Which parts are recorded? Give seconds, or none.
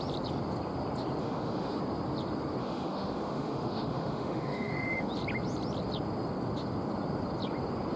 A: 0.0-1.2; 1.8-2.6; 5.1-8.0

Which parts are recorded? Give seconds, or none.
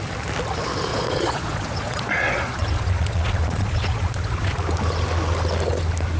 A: 0.0-0.9; 4.6-6.2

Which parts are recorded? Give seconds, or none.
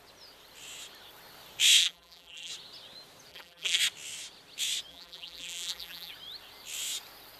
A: 0.0-1.8; 2.5-3.3; 3.8-4.9; 6.1-7.4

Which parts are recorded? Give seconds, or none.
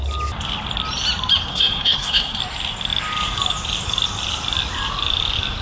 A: 0.0-1.5; 2.4-5.6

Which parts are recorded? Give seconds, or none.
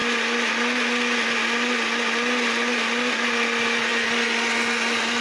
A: 0.0-5.2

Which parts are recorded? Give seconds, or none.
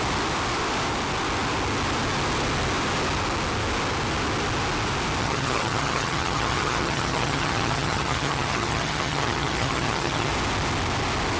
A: 0.0-5.2; 10.3-11.4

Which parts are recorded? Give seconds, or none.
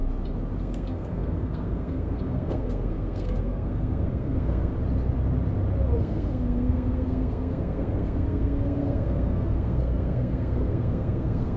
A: 0.0-0.6; 4.7-6.0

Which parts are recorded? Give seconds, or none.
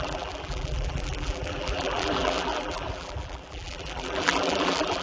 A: none